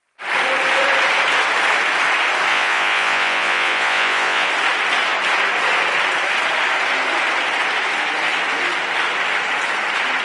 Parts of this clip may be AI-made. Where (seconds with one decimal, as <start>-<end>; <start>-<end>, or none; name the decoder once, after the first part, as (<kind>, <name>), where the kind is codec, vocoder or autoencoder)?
2.5-4.5 (vocoder, Vocos)